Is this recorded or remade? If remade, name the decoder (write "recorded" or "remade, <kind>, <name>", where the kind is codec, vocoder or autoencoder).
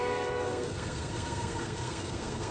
remade, codec, SNAC